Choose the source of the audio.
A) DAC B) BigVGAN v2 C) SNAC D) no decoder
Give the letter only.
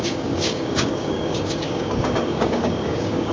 A